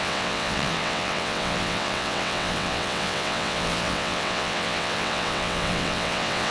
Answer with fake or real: fake